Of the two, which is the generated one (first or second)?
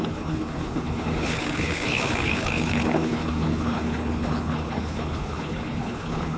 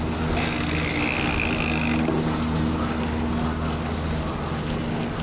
first